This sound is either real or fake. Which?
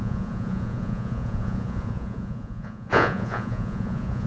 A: fake